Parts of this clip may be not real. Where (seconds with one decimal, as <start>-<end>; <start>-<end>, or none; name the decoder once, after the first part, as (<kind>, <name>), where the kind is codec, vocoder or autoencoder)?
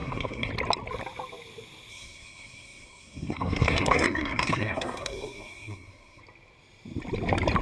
0.0-0.5 (codec, SNAC); 1.9-6.2